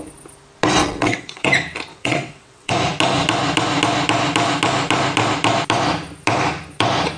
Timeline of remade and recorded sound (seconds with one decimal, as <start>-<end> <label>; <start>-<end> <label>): 0.0-0.8 recorded; 0.8-1.5 remade; 1.5-1.9 recorded; 1.9-2.7 remade; 2.7-7.2 recorded